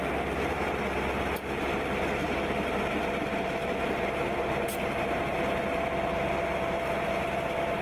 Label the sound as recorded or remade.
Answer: recorded